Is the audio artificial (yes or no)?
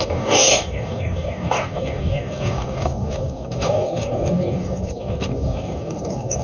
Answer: yes